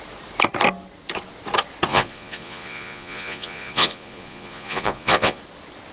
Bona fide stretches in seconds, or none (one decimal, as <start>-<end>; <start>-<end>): 0.0-1.9; 5.4-5.9